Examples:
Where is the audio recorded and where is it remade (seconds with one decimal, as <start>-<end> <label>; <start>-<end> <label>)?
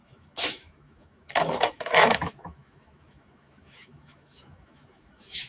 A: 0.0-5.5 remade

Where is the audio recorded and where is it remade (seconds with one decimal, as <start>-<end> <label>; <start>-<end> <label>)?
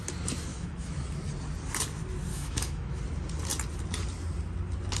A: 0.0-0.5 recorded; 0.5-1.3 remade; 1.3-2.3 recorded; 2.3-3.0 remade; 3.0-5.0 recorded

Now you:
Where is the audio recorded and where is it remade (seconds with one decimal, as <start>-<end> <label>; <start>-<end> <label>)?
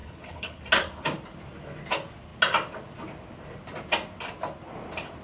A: 0.0-0.6 remade; 0.6-5.2 recorded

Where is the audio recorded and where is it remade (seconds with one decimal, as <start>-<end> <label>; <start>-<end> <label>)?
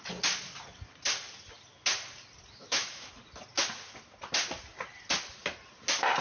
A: 0.0-2.6 recorded; 2.6-3.1 remade; 3.1-6.2 recorded